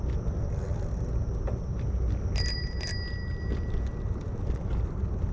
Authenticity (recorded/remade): recorded